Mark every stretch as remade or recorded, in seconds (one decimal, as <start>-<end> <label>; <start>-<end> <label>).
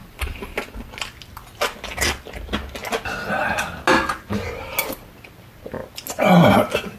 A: 0.0-0.6 remade; 0.6-7.0 recorded